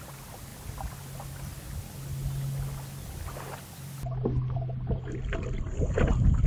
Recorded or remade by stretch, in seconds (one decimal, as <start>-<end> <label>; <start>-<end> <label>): 0.0-6.5 recorded